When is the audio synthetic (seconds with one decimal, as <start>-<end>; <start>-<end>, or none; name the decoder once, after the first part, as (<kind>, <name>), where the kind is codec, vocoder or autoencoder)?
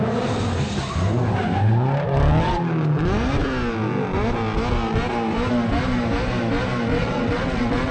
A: 6.9-7.9 (vocoder, WaveNeXt)